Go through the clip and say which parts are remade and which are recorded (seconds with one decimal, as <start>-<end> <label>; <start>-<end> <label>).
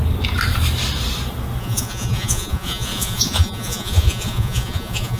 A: 0.0-1.6 recorded; 1.6-5.2 remade